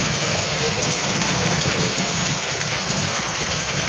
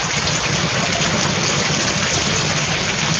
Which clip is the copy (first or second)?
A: first